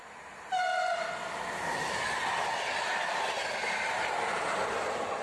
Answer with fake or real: real